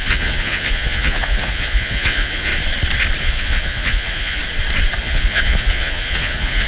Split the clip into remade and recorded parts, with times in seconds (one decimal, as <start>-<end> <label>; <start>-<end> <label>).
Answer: 0.0-2.5 remade; 2.5-3.2 recorded; 3.2-4.4 remade; 4.4-5.0 recorded; 5.0-6.7 remade